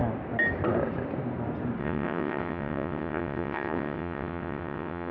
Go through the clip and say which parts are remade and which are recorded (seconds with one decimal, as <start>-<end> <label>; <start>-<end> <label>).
0.0-1.8 recorded; 1.8-5.1 remade